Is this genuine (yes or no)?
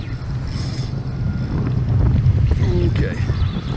yes